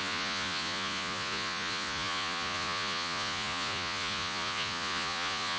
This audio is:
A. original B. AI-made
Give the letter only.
B